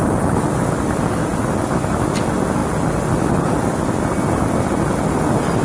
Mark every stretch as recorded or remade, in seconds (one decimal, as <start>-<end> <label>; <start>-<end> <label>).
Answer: 0.0-5.6 recorded